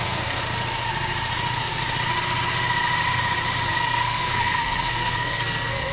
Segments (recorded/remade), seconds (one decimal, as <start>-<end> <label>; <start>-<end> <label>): 0.0-0.4 remade; 0.4-3.7 recorded; 3.7-5.9 remade